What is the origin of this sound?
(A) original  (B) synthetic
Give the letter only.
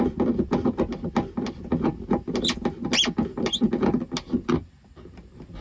A